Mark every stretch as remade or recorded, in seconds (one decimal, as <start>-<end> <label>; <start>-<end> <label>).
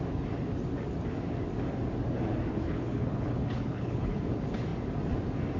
0.0-2.5 recorded; 2.5-4.2 remade; 4.2-5.6 recorded